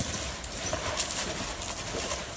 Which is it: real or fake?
real